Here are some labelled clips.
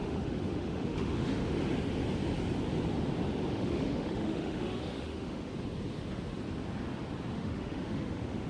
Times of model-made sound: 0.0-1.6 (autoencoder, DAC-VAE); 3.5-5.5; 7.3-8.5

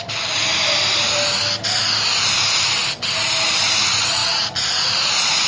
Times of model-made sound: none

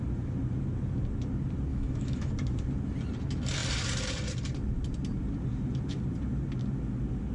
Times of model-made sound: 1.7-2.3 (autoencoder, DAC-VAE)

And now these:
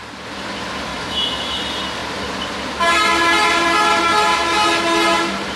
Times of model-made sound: 0.9-1.6 (autoencoder, DAC-VAE)

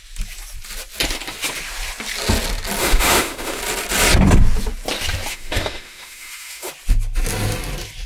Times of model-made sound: 2.8-3.6 (autoencoder, DAC-VAE); 5.3-6.7